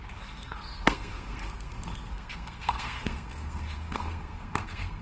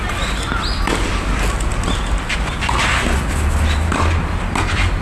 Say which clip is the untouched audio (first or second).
second